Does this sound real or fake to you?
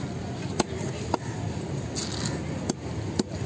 real